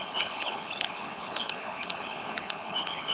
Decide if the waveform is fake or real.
fake